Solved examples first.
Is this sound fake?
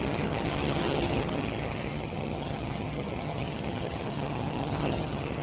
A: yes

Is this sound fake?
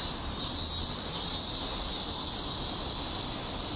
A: no